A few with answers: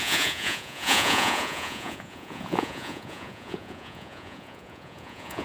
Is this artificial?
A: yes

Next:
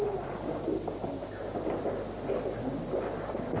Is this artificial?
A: no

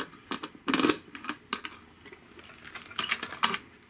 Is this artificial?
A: no